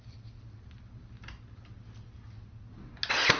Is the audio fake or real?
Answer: real